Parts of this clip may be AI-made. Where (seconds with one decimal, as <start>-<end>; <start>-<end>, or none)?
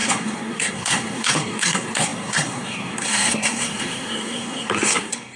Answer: 0.0-5.4